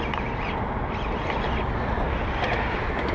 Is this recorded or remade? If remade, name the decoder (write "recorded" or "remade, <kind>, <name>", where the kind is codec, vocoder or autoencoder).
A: recorded